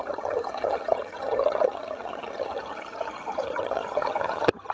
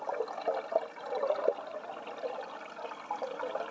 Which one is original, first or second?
second